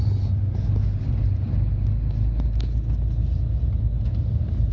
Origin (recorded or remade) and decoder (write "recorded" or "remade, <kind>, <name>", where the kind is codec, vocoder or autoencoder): recorded